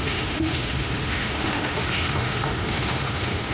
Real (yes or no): no